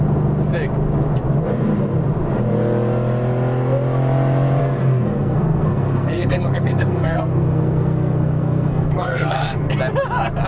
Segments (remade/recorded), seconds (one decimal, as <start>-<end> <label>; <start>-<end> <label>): 0.0-4.6 recorded; 4.6-9.7 remade; 9.7-10.5 recorded